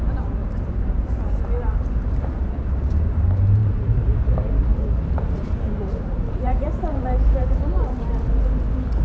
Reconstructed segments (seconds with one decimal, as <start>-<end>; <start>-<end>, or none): 0.4-3.0; 3.6-7.8